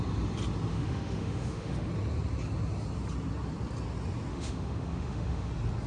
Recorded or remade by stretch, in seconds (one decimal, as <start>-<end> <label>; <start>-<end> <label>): 0.0-0.7 recorded; 0.7-1.9 remade; 1.9-4.3 recorded; 4.3-5.5 remade; 5.5-5.9 recorded